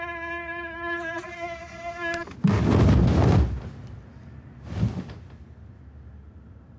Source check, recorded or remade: recorded